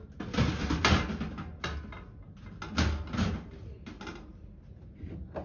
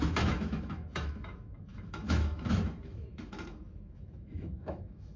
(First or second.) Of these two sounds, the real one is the first